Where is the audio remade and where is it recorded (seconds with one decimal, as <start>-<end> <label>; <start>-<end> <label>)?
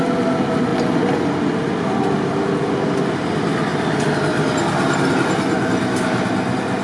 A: 0.0-6.8 recorded